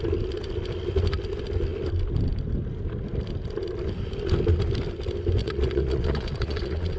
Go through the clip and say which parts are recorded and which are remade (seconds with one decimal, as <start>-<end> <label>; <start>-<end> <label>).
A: 0.0-5.4 recorded; 5.4-7.0 remade